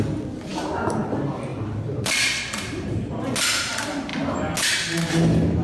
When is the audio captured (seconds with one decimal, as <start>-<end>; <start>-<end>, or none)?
0.0-1.5; 2.4-5.6